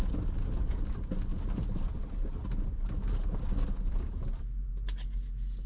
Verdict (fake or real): real